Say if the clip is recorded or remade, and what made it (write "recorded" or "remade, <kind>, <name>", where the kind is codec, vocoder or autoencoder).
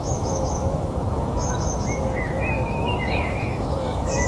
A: remade, autoencoder, DAC-VAE